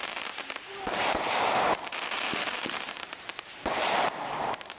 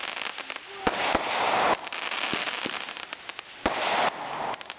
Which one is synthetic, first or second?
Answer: first